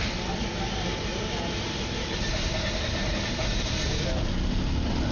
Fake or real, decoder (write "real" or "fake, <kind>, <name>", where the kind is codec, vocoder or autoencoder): real